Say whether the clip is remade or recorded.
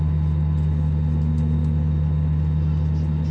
recorded